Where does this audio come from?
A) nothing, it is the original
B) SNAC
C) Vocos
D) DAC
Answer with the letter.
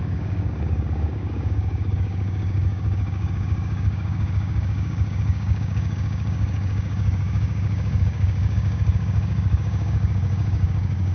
D